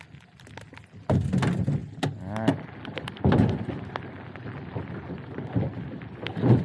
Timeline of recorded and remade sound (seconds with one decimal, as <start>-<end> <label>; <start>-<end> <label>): 0.0-6.6 recorded